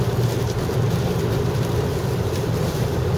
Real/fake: real